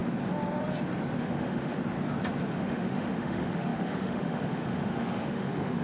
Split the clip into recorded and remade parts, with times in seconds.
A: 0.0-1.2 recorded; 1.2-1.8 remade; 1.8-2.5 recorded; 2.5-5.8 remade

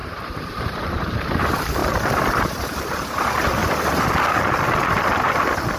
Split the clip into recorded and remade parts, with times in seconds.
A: 0.0-3.6 remade; 3.6-5.8 recorded

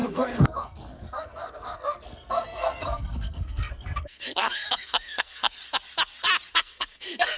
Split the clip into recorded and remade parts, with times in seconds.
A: 0.0-5.6 remade; 5.6-6.5 recorded; 6.5-7.4 remade

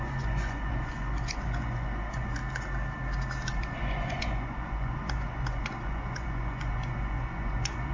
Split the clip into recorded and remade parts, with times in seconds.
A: 0.0-2.4 remade; 2.4-3.6 recorded; 3.6-7.9 remade

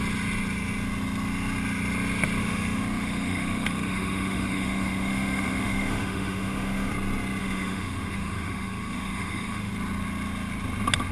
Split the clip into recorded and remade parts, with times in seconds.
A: 0.0-2.4 recorded; 2.4-6.9 remade; 6.9-7.4 recorded; 7.4-9.7 remade; 9.7-11.1 recorded

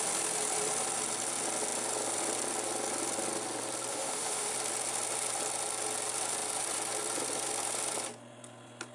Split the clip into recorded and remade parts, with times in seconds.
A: 0.0-3.9 recorded; 3.9-4.5 remade; 4.5-8.9 recorded

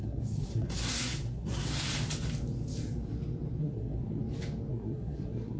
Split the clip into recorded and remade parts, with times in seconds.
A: 0.0-1.7 remade; 1.7-3.6 recorded; 3.6-4.2 remade; 4.2-4.7 recorded; 4.7-5.6 remade